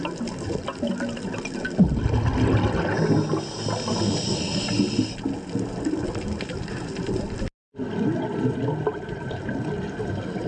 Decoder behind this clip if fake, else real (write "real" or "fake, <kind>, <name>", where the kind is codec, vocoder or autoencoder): real